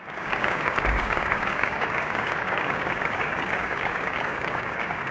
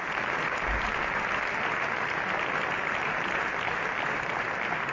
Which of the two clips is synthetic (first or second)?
first